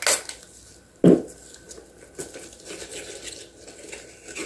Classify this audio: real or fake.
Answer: real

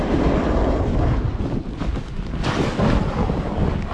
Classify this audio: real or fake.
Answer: real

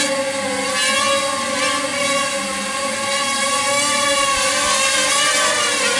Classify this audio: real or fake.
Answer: real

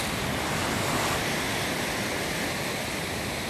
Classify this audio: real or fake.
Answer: real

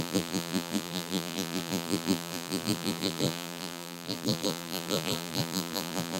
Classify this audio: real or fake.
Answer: fake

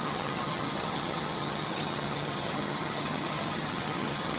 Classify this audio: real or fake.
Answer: fake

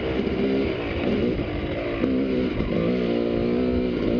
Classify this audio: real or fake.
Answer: real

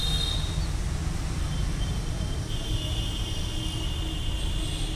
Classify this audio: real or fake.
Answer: real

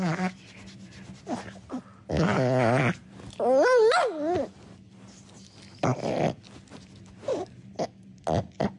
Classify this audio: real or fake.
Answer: real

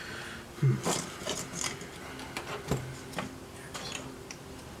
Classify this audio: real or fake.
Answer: real